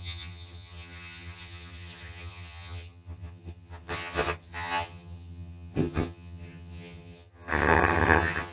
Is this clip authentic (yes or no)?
no